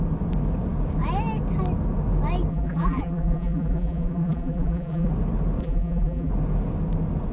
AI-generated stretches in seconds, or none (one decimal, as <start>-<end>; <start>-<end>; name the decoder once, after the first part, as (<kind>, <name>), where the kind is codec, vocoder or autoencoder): 2.5-5.1 (vocoder, BigVGAN v2); 5.6-6.3

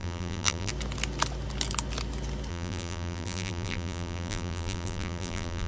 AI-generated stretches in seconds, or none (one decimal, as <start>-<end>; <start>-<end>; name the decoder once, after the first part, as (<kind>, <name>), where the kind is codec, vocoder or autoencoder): 0.0-0.7 (vocoder, BigVGAN v2); 2.5-5.7

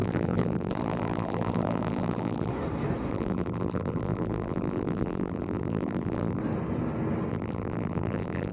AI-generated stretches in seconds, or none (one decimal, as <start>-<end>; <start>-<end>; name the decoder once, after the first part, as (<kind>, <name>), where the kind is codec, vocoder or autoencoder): 0.0-2.5 (vocoder, BigVGAN v2); 3.1-6.4; 7.3-8.5

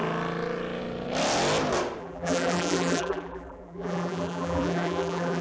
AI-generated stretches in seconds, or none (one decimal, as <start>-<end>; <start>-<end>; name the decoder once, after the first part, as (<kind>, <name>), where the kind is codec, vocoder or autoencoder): 2.0-5.4 (vocoder, BigVGAN v2)